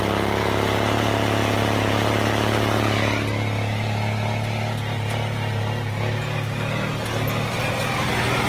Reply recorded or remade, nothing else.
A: recorded